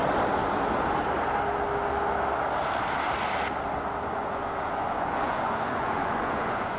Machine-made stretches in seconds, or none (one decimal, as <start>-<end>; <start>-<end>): 4.1-6.8